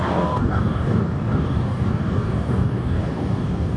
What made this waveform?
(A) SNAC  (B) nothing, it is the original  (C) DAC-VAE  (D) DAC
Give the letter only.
D